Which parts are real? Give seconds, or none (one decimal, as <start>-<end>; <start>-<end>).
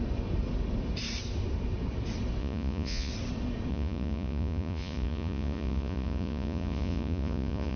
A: 0.0-2.4; 3.1-3.7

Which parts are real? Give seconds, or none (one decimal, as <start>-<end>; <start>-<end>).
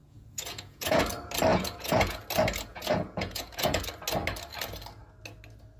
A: 1.0-1.5; 2.2-2.7; 3.8-5.8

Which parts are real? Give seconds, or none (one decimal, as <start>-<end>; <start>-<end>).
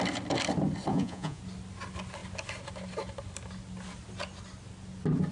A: 0.0-0.9; 1.4-5.3